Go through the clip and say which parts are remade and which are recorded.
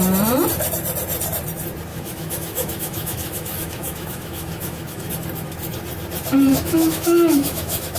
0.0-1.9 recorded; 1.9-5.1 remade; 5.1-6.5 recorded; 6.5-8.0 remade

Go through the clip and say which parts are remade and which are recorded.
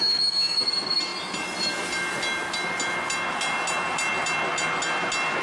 0.0-0.6 remade; 0.6-5.4 recorded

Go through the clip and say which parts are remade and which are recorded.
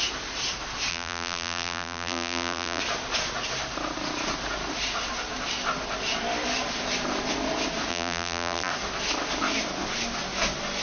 0.0-0.9 recorded; 0.9-2.8 remade; 2.8-7.9 recorded; 7.9-8.7 remade; 8.7-10.8 recorded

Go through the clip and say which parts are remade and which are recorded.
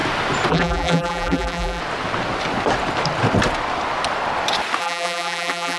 0.0-0.5 recorded; 0.5-1.8 remade; 1.8-4.8 recorded; 4.8-5.8 remade